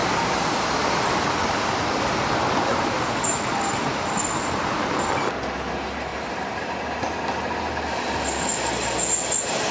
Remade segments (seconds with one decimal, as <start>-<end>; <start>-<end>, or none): 2.7-3.3; 6.1-6.7